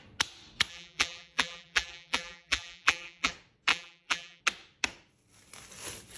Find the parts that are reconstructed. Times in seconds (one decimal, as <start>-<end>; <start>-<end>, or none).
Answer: 0.7-3.3; 3.7-4.4